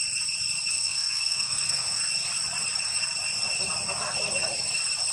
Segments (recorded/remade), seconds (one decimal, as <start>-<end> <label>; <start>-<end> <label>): 0.0-0.7 recorded; 0.7-2.0 remade; 2.0-5.1 recorded